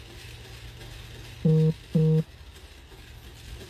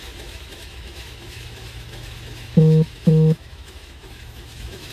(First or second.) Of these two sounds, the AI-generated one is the second